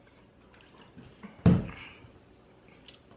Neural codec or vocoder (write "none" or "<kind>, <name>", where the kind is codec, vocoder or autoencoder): none